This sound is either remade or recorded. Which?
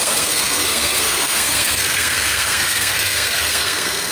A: remade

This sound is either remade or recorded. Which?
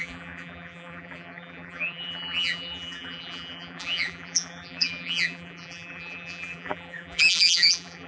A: remade